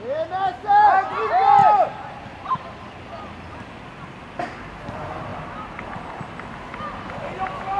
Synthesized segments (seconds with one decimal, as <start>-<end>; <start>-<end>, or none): none